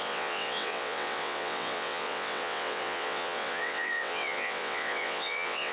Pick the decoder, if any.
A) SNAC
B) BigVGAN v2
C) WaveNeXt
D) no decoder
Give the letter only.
C